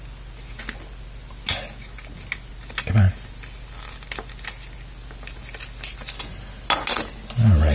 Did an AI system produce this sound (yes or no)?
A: no